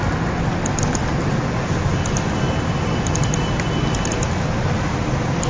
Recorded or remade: recorded